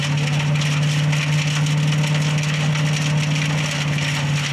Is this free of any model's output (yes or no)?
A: yes